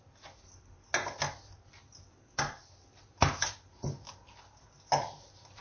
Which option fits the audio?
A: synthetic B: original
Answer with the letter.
B